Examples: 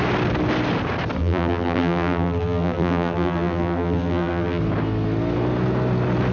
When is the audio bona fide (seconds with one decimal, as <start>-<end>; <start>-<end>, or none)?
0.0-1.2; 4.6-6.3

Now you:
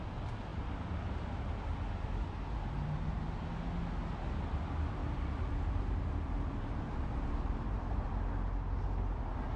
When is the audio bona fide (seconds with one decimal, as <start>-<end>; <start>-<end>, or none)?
0.0-5.0; 8.1-9.6

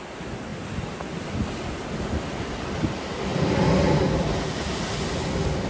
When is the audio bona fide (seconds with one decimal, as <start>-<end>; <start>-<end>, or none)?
0.0-5.7

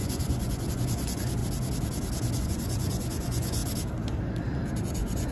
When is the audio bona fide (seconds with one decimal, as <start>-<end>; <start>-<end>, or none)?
1.4-2.4; 3.6-4.8

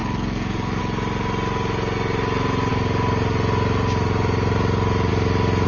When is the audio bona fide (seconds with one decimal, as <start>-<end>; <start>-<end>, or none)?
0.8-5.7

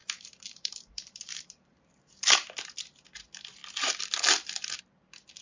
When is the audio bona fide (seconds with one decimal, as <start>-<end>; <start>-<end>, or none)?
2.7-5.4

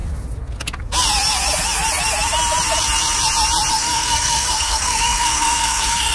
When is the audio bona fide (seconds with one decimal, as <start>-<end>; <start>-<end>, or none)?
0.0-3.7

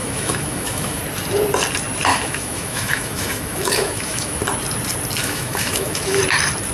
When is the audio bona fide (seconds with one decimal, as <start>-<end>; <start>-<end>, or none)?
1.0-2.1; 4.4-5.2; 6.2-6.7